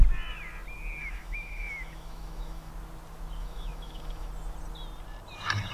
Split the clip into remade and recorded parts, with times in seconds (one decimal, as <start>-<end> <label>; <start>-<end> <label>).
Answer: 0.0-1.0 recorded; 1.0-2.7 remade; 2.7-3.4 recorded; 3.4-4.3 remade; 4.3-5.7 recorded